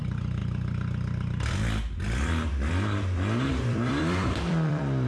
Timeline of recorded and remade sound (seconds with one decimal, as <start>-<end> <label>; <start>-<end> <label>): 0.0-0.4 remade; 0.4-3.5 recorded; 3.5-5.1 remade